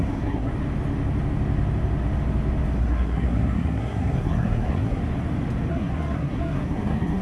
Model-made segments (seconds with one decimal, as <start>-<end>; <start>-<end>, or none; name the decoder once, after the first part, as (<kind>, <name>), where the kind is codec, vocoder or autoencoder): 0.0-0.5 (codec, SNAC); 2.8-5.0; 5.7-7.2